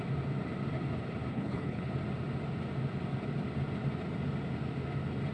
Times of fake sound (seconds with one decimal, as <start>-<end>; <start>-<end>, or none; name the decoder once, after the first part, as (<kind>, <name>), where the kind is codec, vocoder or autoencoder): 1.3-1.9 (codec, HILCodec)